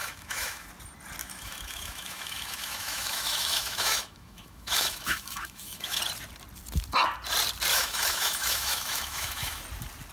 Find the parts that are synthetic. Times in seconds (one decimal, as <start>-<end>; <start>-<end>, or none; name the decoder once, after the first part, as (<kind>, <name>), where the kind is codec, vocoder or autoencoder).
0.0-0.7 (autoencoder, DAC-VAE); 1.2-6.0; 7.7-9.6